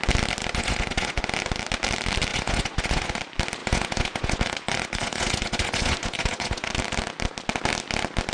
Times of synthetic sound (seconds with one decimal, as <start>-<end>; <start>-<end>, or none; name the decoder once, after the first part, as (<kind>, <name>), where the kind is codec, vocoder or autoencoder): 0.4-1.2 (vocoder, Vocos); 2.3-3.2; 3.6-6.7